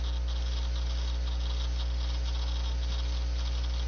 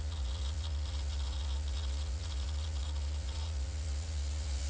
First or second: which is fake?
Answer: second